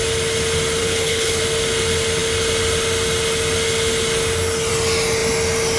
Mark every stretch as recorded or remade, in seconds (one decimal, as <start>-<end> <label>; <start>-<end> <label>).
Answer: 0.0-0.8 recorded; 0.8-1.4 remade; 1.4-5.8 recorded